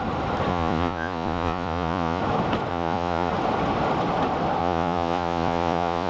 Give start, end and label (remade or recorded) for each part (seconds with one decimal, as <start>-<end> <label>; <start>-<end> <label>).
0.0-0.5 recorded; 0.5-2.2 remade; 2.2-2.7 recorded; 2.7-3.3 remade; 3.3-4.6 recorded; 4.6-6.1 remade